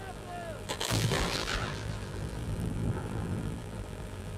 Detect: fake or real fake